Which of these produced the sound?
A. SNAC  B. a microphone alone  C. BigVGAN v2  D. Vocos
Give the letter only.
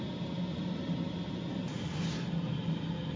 B